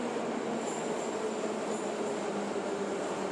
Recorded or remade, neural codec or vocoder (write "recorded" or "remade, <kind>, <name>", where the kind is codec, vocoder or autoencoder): recorded